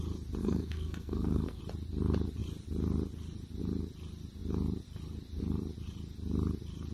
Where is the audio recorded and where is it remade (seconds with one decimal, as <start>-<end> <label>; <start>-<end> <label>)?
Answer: 0.0-0.4 recorded; 0.4-1.6 remade; 1.6-6.9 recorded